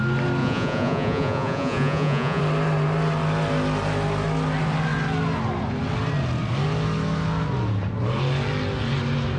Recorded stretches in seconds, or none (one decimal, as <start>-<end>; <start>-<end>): 0.0-0.4; 2.4-9.4